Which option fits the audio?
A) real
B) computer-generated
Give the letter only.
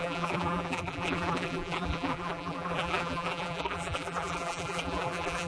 B